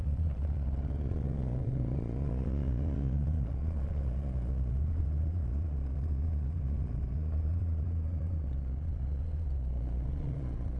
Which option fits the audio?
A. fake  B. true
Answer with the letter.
A